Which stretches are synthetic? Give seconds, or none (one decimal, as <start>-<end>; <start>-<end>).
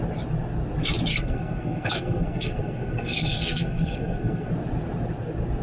1.1-4.5